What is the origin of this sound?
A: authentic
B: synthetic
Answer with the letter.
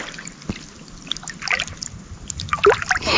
A